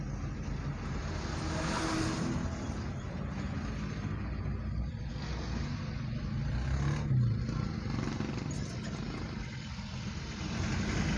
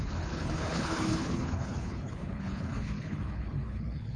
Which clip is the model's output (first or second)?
second